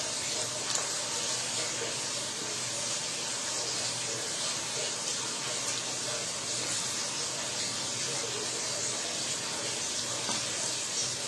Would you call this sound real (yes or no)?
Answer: yes